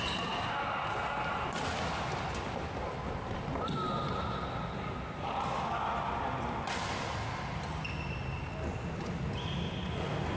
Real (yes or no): yes